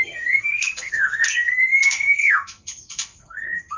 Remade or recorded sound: remade